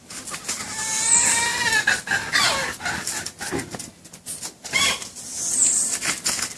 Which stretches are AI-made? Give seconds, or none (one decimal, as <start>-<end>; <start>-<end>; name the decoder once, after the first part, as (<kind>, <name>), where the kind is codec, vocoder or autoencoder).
none